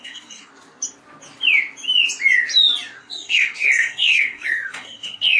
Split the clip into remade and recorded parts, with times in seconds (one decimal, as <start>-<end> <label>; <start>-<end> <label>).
0.0-0.5 remade; 0.5-3.0 recorded; 3.0-5.4 remade